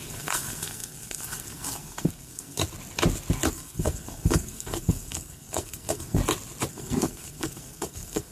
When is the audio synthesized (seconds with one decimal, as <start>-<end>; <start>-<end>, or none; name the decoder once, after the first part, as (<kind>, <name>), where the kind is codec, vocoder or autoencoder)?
0.0-2.6 (codec, SNAC); 3.5-6.2; 6.7-8.3

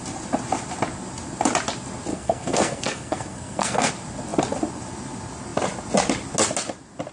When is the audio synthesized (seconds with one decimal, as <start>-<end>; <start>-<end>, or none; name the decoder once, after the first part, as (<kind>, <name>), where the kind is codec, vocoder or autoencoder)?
2.1-3.9 (codec, SNAC)

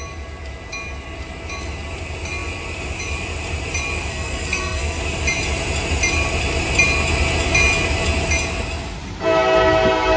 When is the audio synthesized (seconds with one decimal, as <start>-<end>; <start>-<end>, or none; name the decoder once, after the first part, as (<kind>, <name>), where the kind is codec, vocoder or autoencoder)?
4.1-5.0 (codec, SNAC)

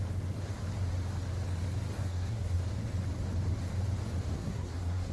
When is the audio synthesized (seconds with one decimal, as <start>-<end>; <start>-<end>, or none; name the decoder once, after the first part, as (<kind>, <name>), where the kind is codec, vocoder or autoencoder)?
2.0-2.6 (codec, SNAC); 4.3-5.1

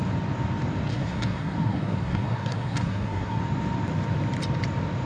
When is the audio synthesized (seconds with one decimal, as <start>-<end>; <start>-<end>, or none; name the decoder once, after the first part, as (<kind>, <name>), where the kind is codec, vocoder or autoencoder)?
0.9-3.4 (codec, SNAC)

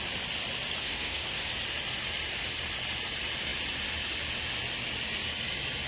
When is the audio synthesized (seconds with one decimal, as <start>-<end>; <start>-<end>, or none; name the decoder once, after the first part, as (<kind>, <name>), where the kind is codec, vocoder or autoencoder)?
0.8-1.5 (codec, SNAC)

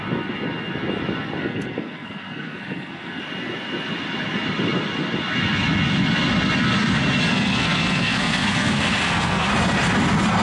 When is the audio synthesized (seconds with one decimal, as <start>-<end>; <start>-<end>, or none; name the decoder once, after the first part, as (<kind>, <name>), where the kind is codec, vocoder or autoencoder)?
1.4-3.2 (codec, SNAC); 7.3-9.5

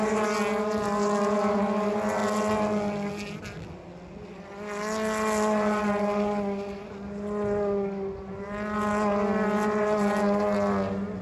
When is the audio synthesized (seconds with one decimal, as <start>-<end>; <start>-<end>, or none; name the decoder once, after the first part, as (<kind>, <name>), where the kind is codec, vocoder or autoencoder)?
none